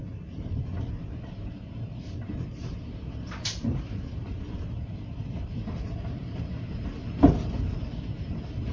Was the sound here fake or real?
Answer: fake